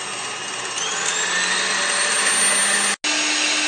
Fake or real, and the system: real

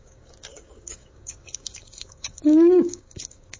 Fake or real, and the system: fake, codec, DAC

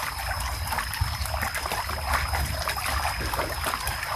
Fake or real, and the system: real